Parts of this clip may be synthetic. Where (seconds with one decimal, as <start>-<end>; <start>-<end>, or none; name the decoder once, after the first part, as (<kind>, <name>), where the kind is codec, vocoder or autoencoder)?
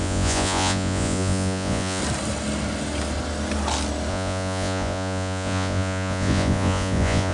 0.0-2.0 (vocoder, Vocos); 4.1-7.3